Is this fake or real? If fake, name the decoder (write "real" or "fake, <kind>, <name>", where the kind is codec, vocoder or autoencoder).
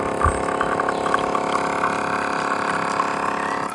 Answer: real